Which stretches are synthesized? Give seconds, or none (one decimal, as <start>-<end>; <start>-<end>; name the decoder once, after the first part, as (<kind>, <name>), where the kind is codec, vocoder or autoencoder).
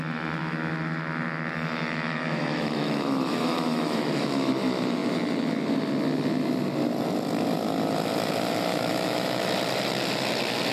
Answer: 0.4-4.5 (autoencoder, DAC-VAE); 8.7-9.4